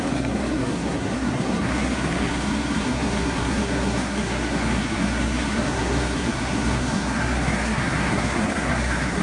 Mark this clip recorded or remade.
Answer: remade